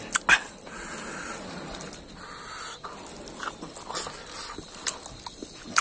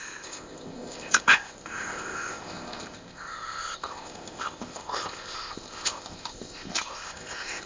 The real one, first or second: first